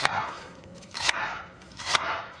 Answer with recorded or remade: remade